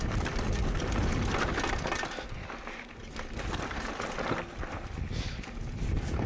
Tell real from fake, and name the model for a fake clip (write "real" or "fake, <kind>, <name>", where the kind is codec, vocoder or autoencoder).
real